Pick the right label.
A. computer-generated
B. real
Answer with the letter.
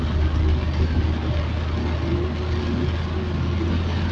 B